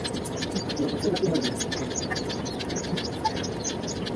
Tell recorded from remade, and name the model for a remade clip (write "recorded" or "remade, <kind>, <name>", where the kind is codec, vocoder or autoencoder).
recorded